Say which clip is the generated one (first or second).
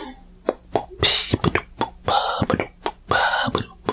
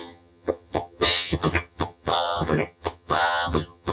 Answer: second